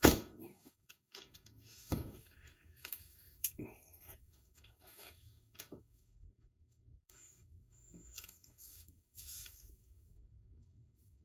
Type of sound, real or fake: fake